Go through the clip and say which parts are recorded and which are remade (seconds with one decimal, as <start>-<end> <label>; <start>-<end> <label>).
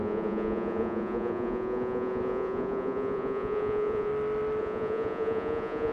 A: 0.0-4.1 remade; 4.1-4.6 recorded; 4.6-5.9 remade